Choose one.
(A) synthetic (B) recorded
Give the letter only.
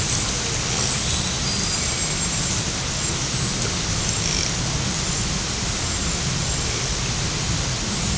B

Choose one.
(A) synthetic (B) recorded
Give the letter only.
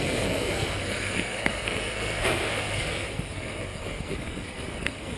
A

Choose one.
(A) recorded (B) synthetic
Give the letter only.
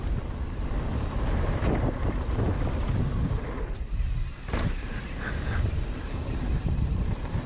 A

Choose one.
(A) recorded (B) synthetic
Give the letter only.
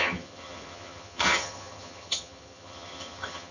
B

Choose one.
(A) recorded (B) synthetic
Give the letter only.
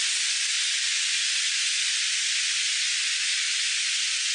A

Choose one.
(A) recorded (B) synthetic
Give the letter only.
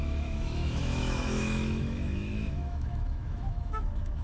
B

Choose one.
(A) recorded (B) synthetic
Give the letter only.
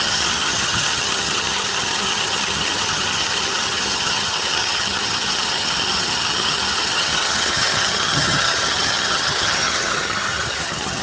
B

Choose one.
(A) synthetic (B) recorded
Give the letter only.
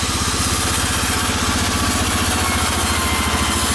B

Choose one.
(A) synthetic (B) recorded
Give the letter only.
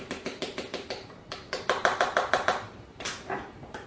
A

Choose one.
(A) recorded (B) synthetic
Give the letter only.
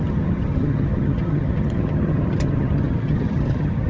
B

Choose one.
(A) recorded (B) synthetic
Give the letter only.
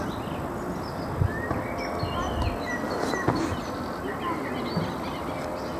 A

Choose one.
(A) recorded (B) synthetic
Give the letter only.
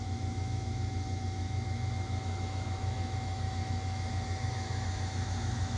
B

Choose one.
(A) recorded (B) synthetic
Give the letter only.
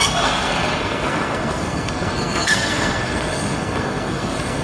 B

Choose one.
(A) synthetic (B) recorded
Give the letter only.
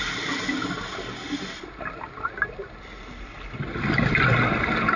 B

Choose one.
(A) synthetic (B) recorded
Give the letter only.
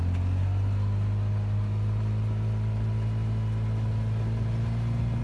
B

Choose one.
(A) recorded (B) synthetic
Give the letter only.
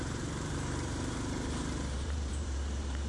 B